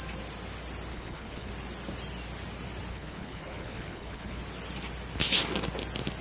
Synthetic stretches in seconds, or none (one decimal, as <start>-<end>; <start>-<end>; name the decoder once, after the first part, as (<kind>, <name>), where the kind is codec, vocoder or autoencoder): 0.9-1.5 (codec, HILCodec); 2.9-4.4